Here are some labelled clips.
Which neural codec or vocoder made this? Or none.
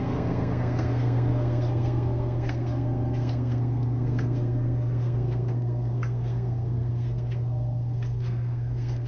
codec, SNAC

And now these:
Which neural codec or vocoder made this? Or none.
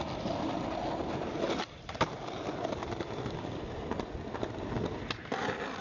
none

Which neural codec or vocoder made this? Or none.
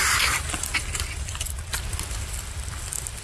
none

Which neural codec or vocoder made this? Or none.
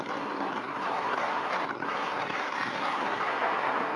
codec, SNAC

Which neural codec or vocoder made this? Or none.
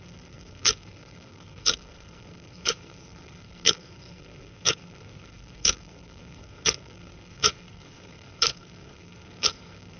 codec, SNAC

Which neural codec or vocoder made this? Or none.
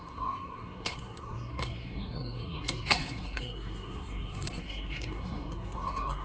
codec, SNAC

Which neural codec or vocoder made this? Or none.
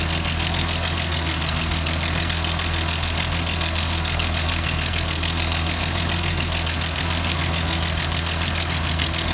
codec, SNAC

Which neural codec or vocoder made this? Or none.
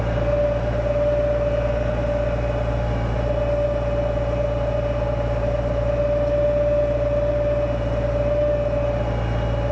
none